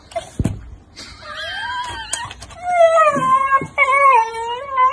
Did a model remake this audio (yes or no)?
no